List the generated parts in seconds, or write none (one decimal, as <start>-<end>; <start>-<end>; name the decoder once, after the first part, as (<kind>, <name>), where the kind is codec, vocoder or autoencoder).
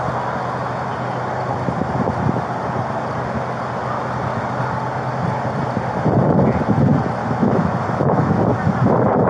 7.2-8.3 (autoencoder, DAC-VAE)